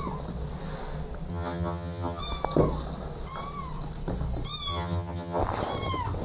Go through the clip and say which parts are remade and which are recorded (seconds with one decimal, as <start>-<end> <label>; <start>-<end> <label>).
0.0-1.3 recorded; 1.3-2.2 remade; 2.2-4.7 recorded; 4.7-5.4 remade; 5.4-6.2 recorded